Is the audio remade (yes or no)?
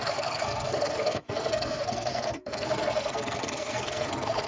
yes